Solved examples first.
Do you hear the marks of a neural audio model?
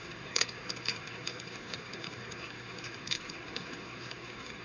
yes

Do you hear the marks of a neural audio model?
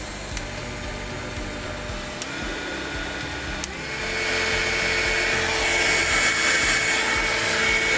no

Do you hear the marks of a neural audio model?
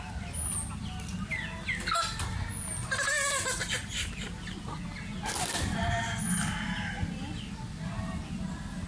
no